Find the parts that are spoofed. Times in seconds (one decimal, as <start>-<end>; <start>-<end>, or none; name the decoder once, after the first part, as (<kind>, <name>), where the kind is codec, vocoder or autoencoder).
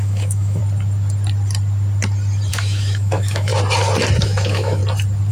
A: 0.0-0.6 (autoencoder, DAC-VAE); 2.5-3.5; 4.2-4.8